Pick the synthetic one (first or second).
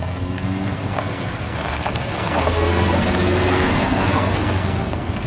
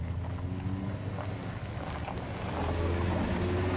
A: first